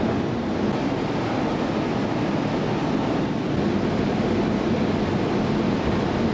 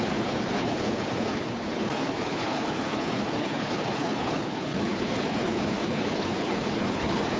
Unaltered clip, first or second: first